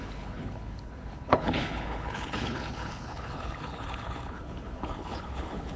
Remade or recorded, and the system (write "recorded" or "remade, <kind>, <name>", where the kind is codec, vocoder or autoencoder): remade, codec, HILCodec